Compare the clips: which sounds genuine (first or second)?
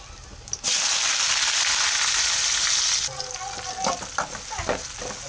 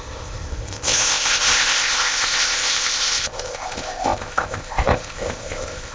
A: first